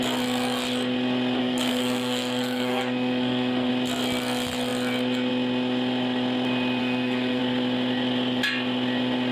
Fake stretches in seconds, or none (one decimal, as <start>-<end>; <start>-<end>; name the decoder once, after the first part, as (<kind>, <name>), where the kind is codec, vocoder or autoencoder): 1.4-3.7 (codec, SNAC); 6.8-7.4

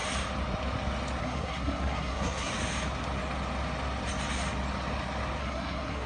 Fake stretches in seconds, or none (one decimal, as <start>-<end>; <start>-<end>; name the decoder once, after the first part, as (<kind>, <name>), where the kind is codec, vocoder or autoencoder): 1.2-2.5 (codec, SNAC); 5.4-6.1